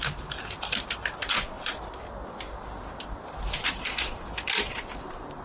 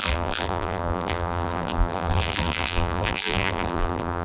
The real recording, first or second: first